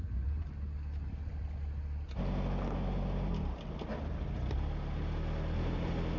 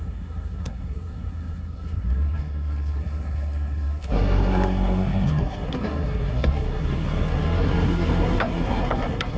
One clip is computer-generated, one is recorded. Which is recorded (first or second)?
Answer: first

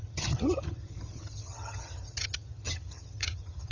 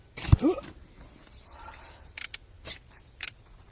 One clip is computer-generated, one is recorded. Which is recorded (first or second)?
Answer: second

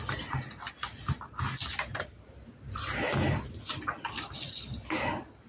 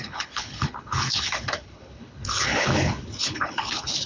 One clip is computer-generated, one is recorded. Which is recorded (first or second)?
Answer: first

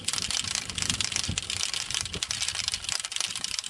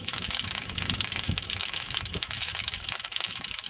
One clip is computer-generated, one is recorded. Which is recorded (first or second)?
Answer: first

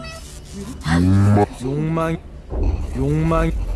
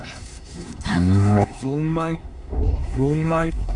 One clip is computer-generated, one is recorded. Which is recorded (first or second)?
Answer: first